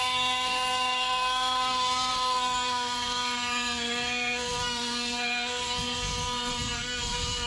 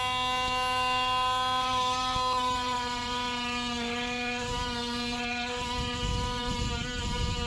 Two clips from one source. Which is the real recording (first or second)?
second